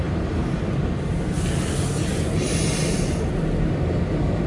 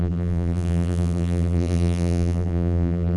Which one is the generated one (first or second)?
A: second